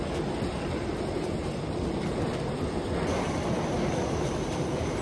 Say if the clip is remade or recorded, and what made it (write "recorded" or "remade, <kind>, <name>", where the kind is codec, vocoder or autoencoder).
recorded